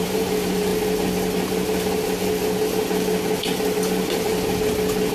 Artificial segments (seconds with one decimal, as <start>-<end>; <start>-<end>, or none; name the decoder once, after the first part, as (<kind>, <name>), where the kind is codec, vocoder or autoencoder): 0.0-0.7 (vocoder, BigVGAN v2); 3.8-4.3